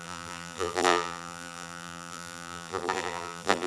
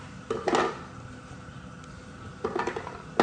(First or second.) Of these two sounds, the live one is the second